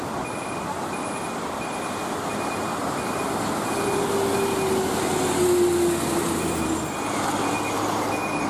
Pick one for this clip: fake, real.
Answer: real